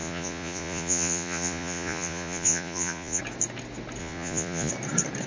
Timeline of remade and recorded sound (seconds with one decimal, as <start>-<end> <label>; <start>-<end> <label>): 0.0-3.2 remade; 3.2-4.0 recorded; 4.0-4.7 remade; 4.7-5.3 recorded